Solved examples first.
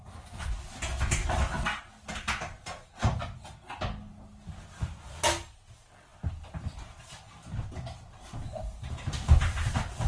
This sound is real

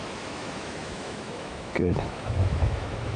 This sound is fake